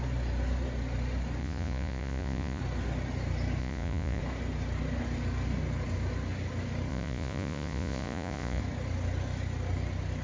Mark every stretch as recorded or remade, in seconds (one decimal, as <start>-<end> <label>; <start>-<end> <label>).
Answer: 0.0-1.4 recorded; 1.4-2.6 remade; 2.6-3.6 recorded; 3.6-4.2 remade; 4.2-6.9 recorded; 6.9-8.6 remade; 8.6-10.2 recorded